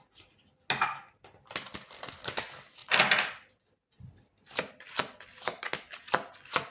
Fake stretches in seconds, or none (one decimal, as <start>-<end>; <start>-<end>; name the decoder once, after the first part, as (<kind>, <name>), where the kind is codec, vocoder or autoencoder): none